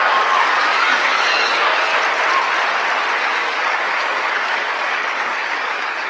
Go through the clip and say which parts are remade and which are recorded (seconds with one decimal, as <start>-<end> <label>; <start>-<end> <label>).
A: 0.0-1.9 remade; 1.9-3.2 recorded; 3.2-6.1 remade